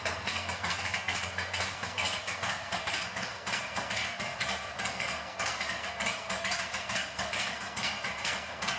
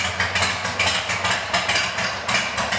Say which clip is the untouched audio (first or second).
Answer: second